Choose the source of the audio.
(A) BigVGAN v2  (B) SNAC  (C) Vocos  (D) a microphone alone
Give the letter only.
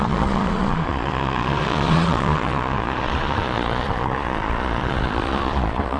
C